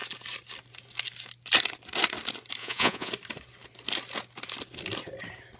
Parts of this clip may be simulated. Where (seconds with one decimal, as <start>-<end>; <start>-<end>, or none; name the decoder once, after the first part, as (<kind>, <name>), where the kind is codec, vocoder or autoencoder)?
2.6-3.1 (vocoder, Vocos)